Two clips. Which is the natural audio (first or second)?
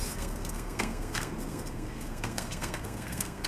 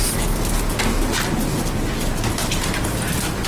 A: second